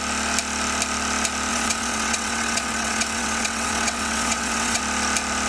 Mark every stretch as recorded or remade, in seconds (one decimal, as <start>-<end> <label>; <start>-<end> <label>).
0.0-1.5 recorded; 1.5-4.8 remade; 4.8-5.5 recorded